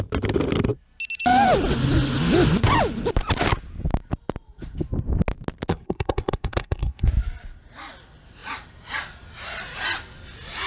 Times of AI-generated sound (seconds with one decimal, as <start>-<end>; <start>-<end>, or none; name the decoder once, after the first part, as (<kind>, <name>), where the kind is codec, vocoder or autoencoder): 5.7-7.1 (codec, SNAC)